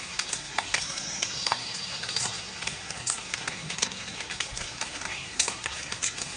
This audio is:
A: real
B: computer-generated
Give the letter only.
B